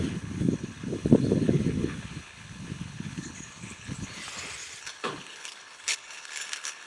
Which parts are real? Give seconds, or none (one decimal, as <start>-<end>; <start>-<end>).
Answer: 4.2-4.8